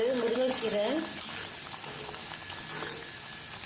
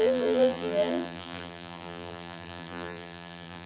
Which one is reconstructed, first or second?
second